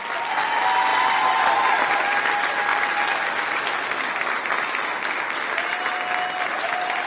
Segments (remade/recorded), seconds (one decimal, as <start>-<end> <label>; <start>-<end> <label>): 0.0-7.1 recorded